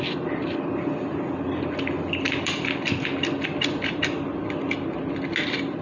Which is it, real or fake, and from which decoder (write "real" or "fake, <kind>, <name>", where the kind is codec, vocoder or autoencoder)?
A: real